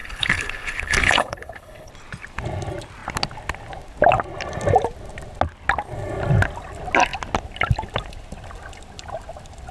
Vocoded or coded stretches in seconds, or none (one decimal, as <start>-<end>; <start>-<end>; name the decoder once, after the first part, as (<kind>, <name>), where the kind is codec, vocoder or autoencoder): 0.0-1.9 (codec, HILCodec)